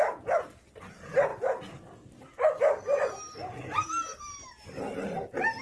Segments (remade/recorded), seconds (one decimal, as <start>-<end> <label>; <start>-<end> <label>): 0.0-5.6 recorded